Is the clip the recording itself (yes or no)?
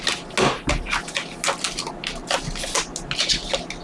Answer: yes